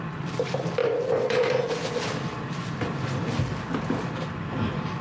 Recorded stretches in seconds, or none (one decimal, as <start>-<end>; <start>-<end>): 0.0-5.0